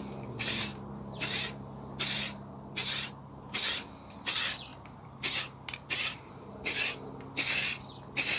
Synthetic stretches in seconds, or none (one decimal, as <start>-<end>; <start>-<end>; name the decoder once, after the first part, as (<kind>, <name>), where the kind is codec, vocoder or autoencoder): 0.7-2.2 (vocoder, BigVGAN v2); 2.8-3.6; 4.7-6.3